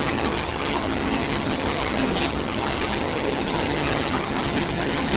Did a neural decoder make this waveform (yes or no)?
yes